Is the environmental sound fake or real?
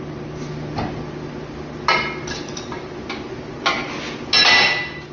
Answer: real